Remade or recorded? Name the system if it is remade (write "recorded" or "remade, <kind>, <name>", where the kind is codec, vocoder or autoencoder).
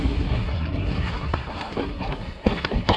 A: remade, codec, SNAC